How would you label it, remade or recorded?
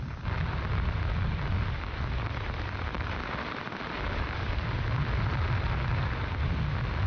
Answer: recorded